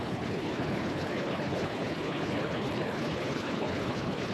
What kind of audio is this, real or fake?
fake